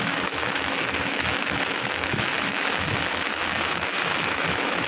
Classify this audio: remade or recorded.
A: remade